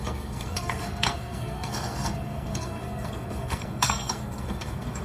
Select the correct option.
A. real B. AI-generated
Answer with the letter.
B